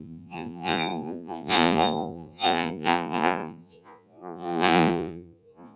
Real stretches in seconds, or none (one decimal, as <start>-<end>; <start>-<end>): none